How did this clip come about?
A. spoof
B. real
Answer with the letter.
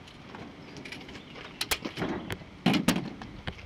B